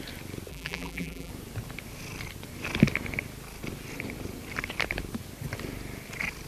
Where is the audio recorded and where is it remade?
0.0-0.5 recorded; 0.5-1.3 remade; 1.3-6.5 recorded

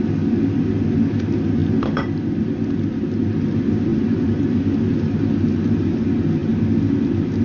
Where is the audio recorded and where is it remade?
0.0-1.6 recorded; 1.6-2.4 remade; 2.4-3.9 recorded; 3.9-4.6 remade; 4.6-7.4 recorded